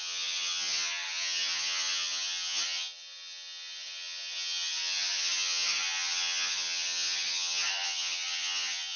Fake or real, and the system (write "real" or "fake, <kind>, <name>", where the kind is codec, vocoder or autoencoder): fake, vocoder, HiFi-GAN